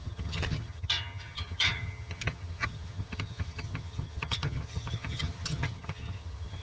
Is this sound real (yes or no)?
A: no